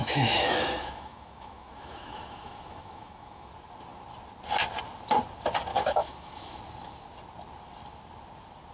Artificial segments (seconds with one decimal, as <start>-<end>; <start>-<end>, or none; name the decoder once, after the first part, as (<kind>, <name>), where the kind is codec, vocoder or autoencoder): 0.0-3.5 (autoencoder, DAC-VAE); 5.7-6.6